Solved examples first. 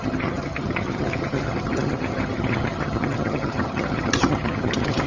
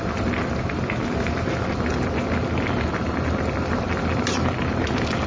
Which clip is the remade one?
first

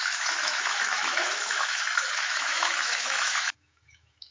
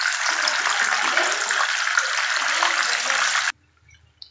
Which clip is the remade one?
first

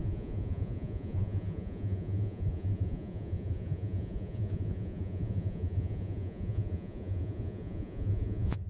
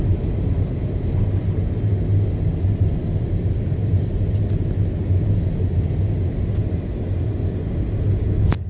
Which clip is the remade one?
first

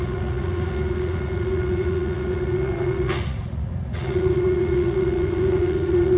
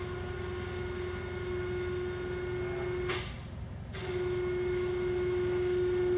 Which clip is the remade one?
first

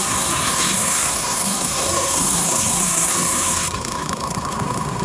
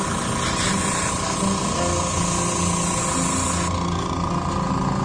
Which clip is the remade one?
first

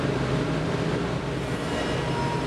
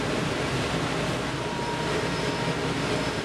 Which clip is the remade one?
second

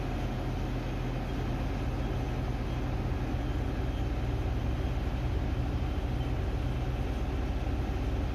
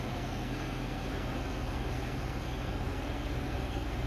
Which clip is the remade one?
second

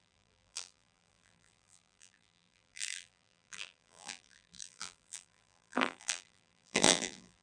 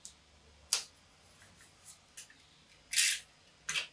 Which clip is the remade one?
first